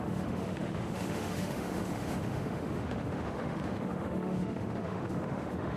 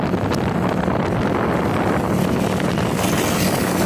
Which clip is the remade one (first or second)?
first